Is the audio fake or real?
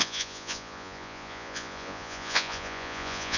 fake